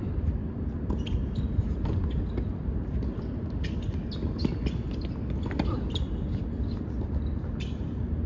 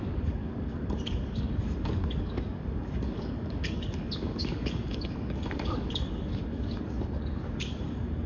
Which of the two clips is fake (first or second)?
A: second